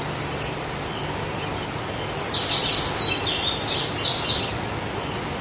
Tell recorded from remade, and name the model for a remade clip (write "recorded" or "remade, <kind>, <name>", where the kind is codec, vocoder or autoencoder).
recorded